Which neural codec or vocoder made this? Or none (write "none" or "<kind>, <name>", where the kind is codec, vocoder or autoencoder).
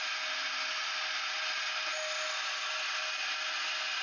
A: none